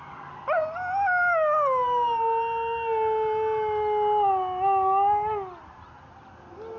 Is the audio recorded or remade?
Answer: recorded